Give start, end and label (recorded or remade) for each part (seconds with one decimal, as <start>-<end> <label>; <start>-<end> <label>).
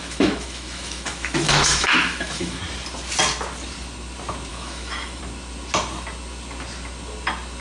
0.0-2.6 remade; 2.6-4.5 recorded; 4.5-5.2 remade; 5.2-7.6 recorded